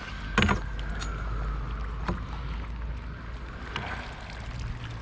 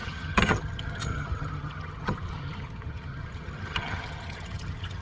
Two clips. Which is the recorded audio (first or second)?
first